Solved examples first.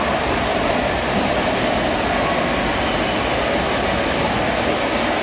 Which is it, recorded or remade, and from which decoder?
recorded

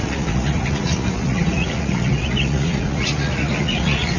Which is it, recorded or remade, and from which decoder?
remade, vocoder, Vocos